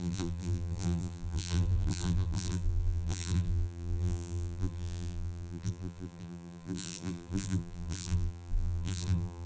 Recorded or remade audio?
remade